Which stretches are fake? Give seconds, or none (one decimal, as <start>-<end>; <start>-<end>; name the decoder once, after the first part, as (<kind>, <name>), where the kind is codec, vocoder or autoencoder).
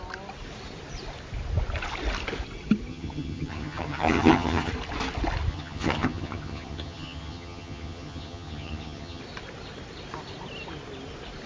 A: 2.9-4.7 (vocoder, HiFi-GAN); 5.5-9.2